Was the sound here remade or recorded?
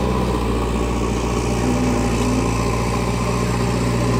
recorded